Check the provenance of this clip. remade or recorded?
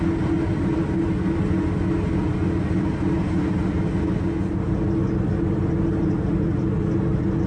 recorded